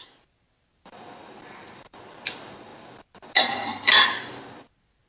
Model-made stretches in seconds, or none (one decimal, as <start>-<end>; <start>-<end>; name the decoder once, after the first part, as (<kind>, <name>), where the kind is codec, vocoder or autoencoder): none